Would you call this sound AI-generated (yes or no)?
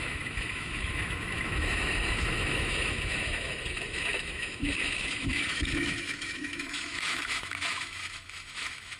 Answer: yes